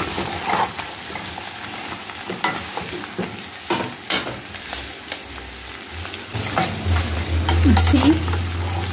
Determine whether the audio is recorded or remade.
recorded